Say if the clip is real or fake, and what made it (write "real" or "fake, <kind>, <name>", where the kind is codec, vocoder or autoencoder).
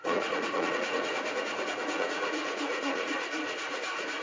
fake, vocoder, Vocos